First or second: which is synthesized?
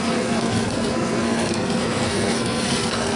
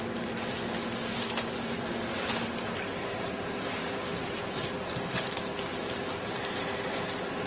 first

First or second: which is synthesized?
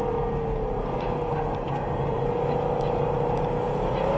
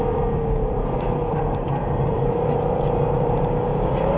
second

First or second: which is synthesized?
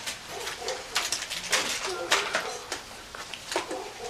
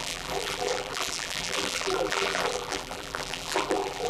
second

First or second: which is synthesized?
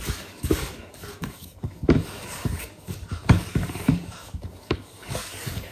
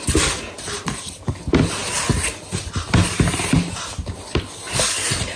first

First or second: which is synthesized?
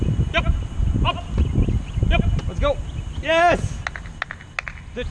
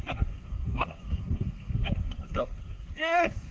second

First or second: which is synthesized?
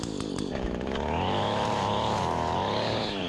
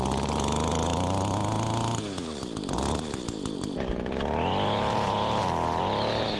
first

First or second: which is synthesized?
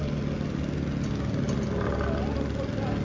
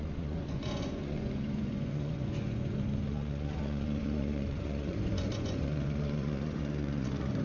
second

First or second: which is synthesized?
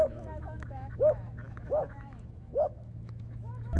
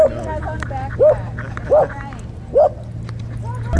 first